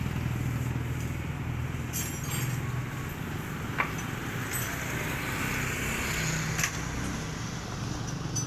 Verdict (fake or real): real